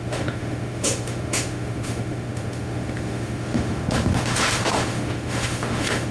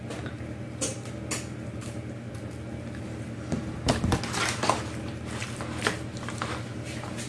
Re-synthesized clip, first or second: first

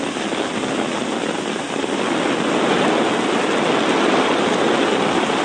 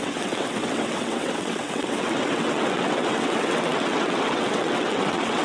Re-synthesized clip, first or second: second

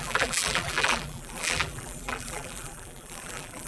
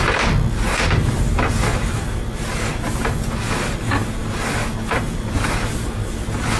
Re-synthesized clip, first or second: first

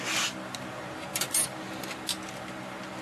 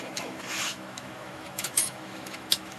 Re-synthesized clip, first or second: second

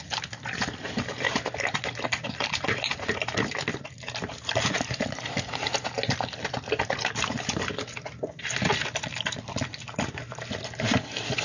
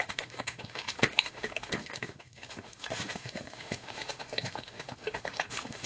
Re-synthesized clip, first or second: second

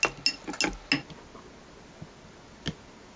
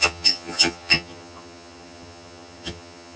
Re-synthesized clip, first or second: second